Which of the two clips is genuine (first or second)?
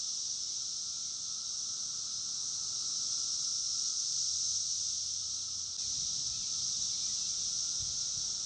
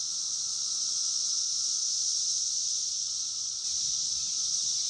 first